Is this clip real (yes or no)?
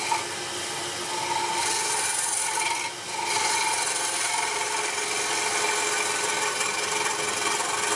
yes